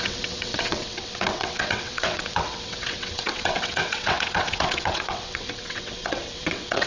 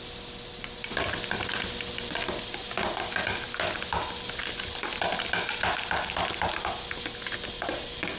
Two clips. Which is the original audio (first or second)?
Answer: second